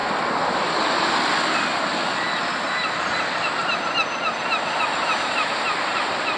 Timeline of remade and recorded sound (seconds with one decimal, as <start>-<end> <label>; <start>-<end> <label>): 0.0-6.4 recorded